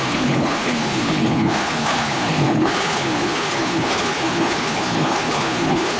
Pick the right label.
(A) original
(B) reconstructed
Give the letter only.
B